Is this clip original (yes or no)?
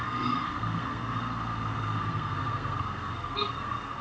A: no